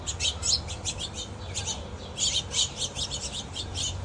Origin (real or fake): real